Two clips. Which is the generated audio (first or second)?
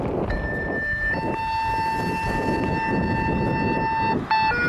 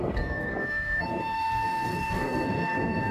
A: second